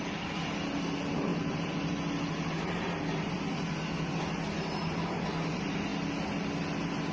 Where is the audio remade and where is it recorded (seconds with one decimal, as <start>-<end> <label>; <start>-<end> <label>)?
0.0-7.1 recorded